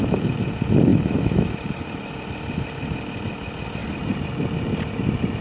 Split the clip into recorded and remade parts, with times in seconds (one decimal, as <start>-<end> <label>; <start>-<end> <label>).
0.0-0.9 recorded; 0.9-2.2 remade; 2.2-5.4 recorded